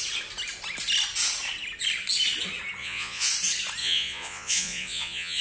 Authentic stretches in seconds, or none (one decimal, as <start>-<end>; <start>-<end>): 0.0-2.8; 3.3-3.8

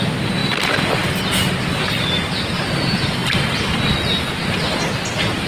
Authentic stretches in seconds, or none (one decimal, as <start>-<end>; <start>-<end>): 0.0-5.5

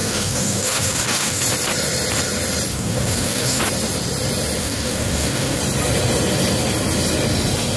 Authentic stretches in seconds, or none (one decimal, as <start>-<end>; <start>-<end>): 1.4-2.7; 3.6-4.6; 5.6-7.8